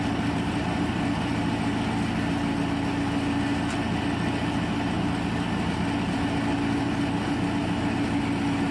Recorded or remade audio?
recorded